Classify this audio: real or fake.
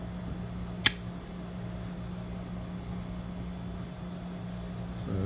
real